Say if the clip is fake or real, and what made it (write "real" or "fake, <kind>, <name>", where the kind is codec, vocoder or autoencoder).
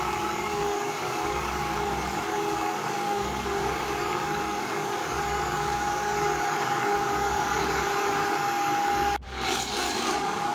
fake, codec, DAC